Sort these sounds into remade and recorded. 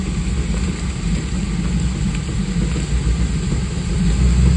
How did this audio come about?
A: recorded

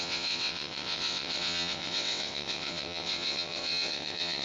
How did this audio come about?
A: remade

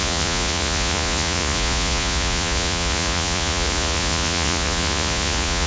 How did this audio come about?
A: remade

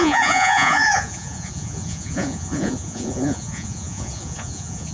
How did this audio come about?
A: remade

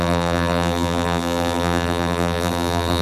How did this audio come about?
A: remade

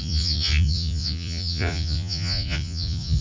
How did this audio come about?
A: remade